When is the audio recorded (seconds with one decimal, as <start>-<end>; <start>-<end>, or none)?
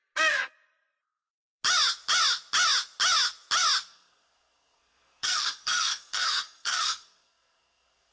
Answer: 0.0-3.9